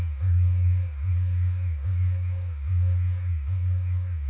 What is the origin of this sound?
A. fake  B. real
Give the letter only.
A